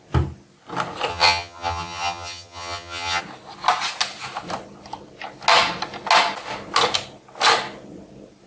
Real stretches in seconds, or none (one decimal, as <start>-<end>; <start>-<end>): 0.0-1.1; 3.2-8.5